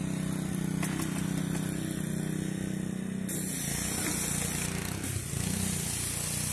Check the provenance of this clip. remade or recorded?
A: recorded